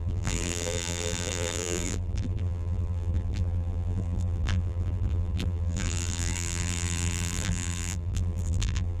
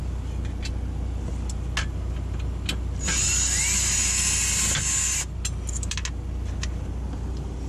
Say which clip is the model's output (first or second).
first